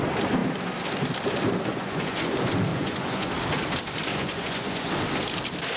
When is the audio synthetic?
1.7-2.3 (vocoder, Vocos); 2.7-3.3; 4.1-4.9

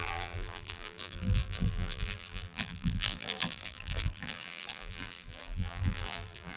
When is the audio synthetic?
0.0-6.6 (vocoder, BigVGAN v2)